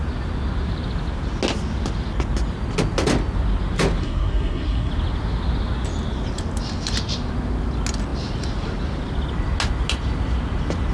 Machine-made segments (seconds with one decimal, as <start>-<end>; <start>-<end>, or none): 4.0-4.9